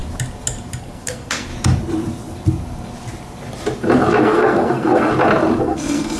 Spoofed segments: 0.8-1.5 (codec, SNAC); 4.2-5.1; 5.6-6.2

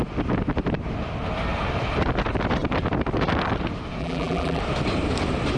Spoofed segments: 4.0-4.6 (vocoder, BigVGAN v2)